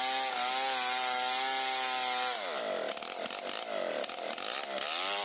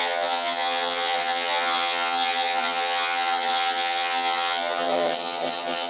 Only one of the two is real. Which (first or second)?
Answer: first